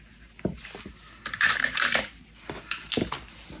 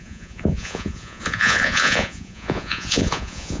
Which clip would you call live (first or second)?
first